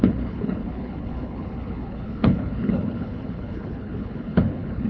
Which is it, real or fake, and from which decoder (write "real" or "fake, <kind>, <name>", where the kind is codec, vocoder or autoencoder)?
fake, codec, HILCodec